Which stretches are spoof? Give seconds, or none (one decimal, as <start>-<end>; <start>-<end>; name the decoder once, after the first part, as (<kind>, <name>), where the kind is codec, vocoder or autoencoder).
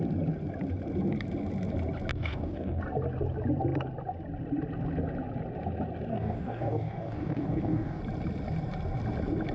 2.1-2.8 (codec, DAC); 6.1-8.0